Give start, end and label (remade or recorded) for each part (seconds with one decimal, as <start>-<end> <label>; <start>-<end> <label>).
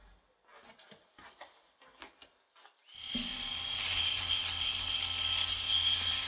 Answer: 0.0-2.9 recorded; 2.9-4.4 remade; 4.4-6.3 recorded